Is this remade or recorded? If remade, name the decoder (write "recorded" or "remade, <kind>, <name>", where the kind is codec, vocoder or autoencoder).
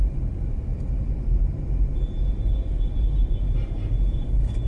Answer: remade, vocoder, BigVGAN v2